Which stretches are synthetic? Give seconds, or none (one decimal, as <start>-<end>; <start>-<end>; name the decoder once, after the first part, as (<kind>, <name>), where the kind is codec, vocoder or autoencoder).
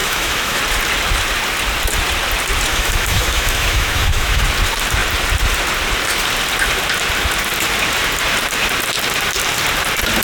0.0-0.6 (autoencoder, DAC-VAE); 2.7-4.4